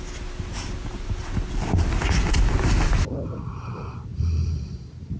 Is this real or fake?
real